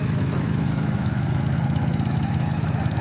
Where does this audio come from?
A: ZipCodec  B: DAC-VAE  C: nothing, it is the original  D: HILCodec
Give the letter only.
B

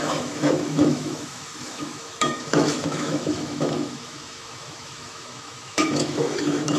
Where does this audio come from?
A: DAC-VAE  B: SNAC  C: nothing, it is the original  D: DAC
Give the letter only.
A